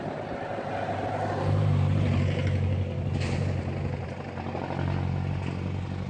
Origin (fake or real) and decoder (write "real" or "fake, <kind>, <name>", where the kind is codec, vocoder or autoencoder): real